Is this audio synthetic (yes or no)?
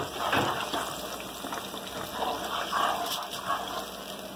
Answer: no